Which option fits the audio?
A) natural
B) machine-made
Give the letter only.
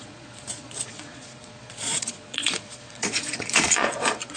B